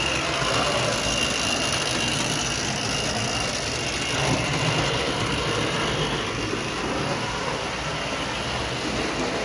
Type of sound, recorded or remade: recorded